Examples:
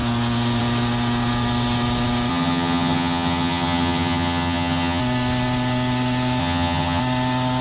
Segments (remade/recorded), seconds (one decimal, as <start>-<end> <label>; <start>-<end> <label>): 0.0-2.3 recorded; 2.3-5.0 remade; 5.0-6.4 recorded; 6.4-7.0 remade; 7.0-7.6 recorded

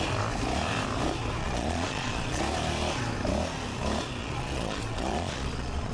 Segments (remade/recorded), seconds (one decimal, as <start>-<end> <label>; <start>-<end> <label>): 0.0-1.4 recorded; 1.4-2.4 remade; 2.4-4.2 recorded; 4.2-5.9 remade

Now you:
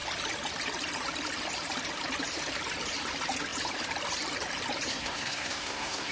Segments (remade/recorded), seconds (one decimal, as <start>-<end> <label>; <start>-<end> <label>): 0.0-4.9 recorded; 4.9-6.1 remade